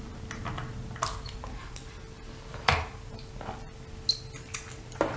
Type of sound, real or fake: real